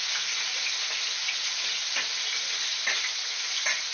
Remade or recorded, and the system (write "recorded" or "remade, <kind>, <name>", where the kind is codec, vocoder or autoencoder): recorded